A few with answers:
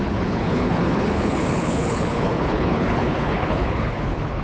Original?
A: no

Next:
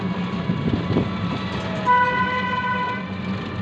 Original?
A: yes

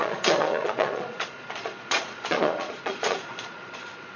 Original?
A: no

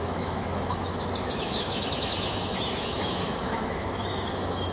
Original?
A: no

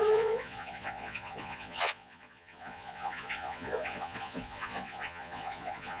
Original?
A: no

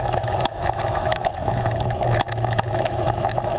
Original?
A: no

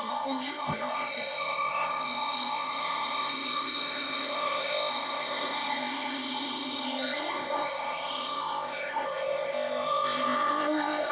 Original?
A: no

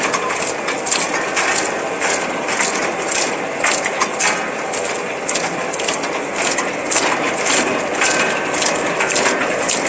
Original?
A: yes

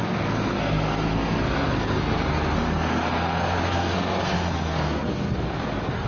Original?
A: no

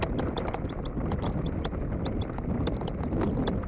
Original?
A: yes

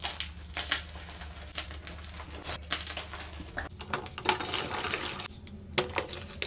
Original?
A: yes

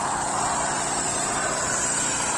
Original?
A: no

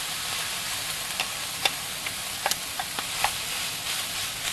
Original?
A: yes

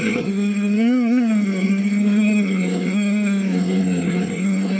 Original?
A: no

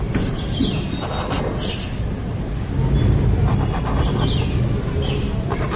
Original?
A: yes